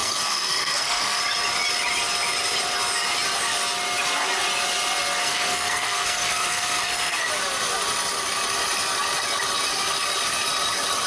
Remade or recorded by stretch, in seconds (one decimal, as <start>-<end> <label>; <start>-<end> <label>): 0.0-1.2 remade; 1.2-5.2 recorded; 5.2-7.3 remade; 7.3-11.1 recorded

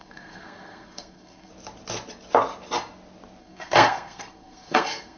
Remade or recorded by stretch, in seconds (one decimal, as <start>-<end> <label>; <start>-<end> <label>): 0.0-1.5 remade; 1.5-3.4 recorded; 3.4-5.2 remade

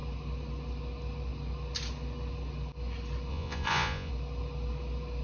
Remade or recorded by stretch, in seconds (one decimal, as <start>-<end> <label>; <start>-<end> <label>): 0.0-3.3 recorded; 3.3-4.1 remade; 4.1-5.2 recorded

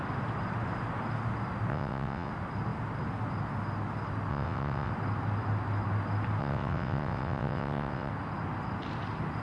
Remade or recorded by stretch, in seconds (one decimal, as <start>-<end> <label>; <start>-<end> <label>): 0.0-1.7 recorded; 1.7-2.3 remade; 2.3-4.3 recorded; 4.3-4.9 remade; 4.9-6.4 recorded; 6.4-8.1 remade; 8.1-9.4 recorded